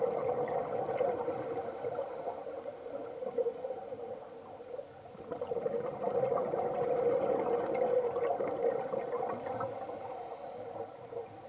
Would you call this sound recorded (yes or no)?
yes